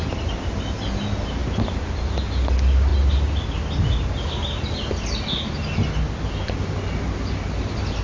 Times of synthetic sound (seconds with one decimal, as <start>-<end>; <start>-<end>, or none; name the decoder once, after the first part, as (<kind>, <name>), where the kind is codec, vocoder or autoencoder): none